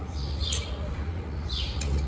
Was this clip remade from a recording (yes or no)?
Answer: yes